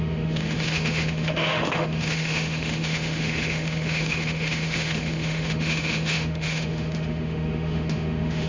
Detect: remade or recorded remade